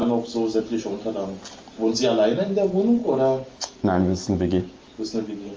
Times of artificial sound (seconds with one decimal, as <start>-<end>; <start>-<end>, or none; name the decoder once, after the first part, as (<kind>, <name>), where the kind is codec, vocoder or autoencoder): 3.0-4.6 (autoencoder, DAC-VAE)

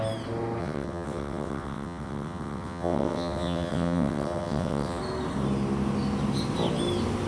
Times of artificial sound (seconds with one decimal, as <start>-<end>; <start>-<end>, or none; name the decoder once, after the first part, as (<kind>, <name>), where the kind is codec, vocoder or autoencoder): 0.6-5.0 (vocoder, WaveNeXt)

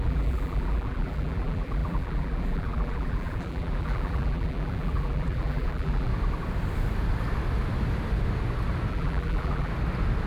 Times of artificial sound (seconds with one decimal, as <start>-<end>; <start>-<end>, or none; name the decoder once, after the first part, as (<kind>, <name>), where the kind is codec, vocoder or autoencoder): 0.0-6.1 (vocoder, BigVGAN v2); 8.9-9.7

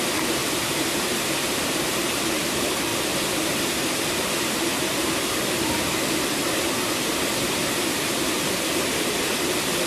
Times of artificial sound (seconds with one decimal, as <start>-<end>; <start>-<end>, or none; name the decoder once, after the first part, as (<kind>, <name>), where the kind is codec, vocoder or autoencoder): 0.4-2.5 (vocoder, BigVGAN v2)

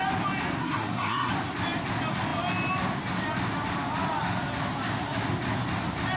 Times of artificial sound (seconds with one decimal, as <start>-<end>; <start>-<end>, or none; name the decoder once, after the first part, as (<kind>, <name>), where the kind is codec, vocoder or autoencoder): 0.6-1.3 (codec, SNAC)

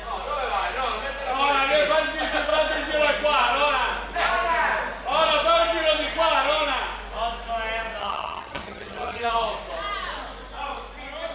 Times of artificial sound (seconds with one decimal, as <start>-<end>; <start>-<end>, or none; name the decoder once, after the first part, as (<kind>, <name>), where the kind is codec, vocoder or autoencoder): 8.0-9.3 (vocoder, HiFi-GAN)

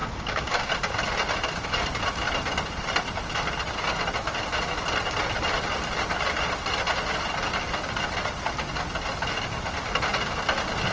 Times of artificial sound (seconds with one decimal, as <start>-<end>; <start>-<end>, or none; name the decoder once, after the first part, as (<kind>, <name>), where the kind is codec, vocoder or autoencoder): 0.0-0.7 (codec, DAC)